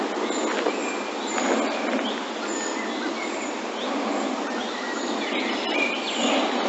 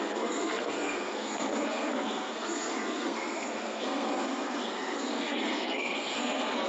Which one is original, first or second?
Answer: first